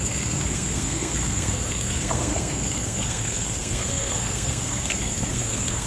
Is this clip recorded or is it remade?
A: remade